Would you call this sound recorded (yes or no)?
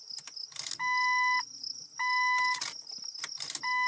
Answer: yes